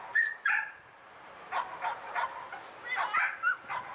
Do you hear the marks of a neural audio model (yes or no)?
yes